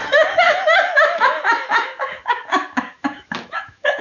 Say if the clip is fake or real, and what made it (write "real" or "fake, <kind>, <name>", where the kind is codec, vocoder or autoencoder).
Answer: fake, autoencoder, DAC-VAE